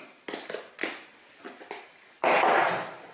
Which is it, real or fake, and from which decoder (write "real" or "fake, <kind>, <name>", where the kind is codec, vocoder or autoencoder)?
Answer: real